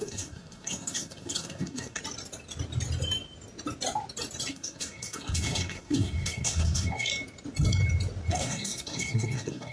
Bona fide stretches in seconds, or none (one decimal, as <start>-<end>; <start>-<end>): 2.0-4.5; 7.1-8.3